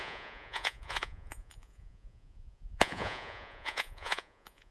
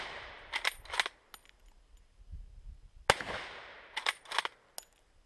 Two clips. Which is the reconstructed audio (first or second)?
first